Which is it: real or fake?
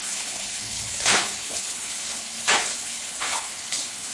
fake